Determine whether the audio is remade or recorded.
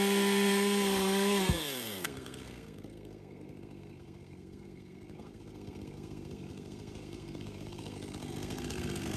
remade